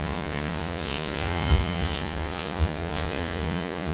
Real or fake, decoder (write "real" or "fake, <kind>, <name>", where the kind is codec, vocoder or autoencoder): fake, vocoder, Vocos